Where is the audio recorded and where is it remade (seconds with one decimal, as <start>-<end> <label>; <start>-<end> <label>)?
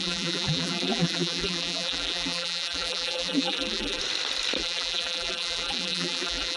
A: 0.0-4.0 remade; 4.0-4.6 recorded; 4.6-6.6 remade